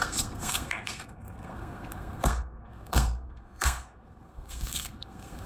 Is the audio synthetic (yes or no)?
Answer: yes